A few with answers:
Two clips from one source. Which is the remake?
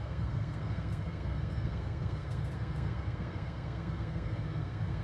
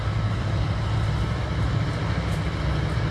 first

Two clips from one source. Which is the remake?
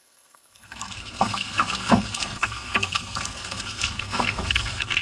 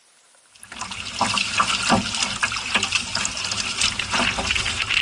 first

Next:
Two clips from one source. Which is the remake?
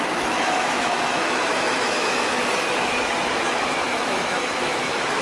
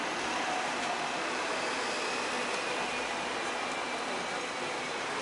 first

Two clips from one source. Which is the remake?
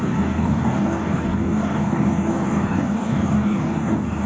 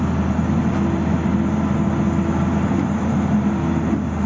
first